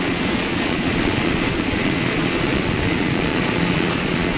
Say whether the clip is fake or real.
fake